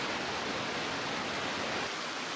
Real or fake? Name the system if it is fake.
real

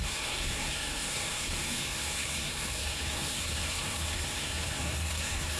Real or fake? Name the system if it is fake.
fake, codec, SNAC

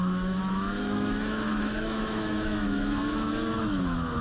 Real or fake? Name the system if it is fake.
fake, autoencoder, DAC-VAE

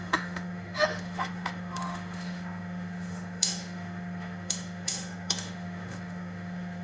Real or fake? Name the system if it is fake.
fake, autoencoder, DAC-VAE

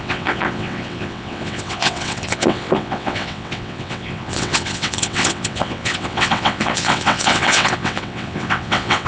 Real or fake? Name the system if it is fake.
fake, vocoder, WaveNeXt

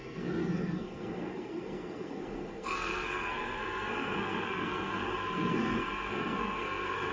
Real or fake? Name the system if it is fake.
fake, codec, SNAC